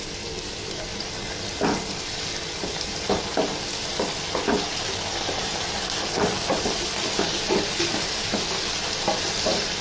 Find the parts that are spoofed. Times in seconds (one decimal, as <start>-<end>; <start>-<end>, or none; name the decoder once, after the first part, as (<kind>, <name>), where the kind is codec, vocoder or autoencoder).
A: 2.9-3.7 (vocoder, BigVGAN v2); 5.4-6.7